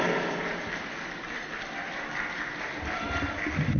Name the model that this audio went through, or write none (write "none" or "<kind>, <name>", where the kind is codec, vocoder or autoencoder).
none